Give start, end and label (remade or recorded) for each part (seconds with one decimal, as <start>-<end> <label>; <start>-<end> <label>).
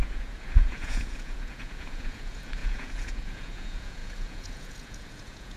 0.0-5.6 remade